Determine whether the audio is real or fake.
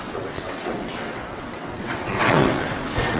fake